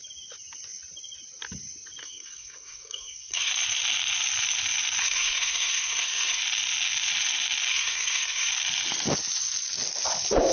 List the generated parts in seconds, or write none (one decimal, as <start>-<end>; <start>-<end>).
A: 2.0-3.5; 5.0-6.4; 7.7-8.5